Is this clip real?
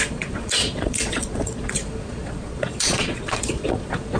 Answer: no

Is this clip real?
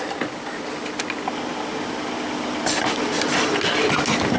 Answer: yes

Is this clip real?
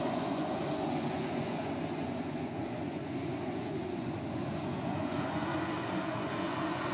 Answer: no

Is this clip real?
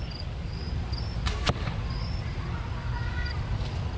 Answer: yes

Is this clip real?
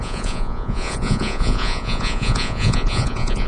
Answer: no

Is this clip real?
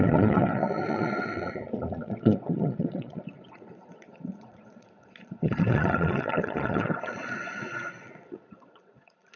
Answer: no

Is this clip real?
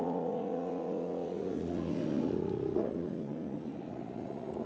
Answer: no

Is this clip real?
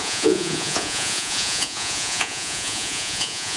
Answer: no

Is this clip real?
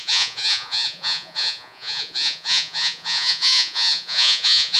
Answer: no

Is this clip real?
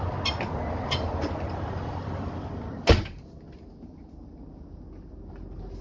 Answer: yes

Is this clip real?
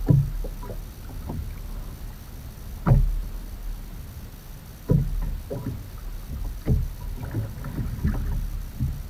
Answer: yes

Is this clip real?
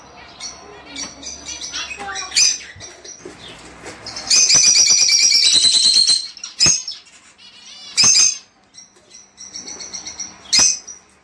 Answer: yes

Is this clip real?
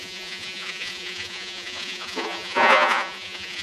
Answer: no